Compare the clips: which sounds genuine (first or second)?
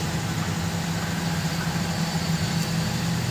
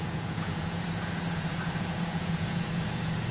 first